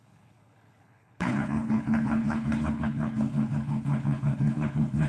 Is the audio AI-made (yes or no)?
yes